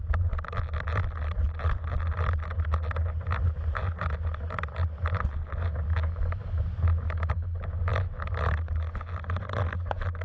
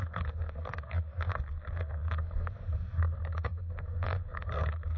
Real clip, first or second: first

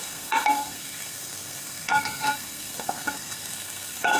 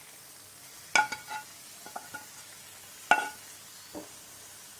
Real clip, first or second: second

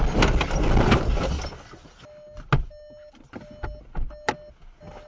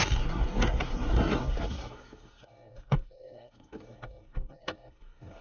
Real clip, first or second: first